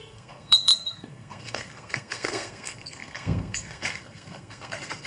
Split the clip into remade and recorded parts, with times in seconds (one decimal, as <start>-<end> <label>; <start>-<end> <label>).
0.0-5.1 remade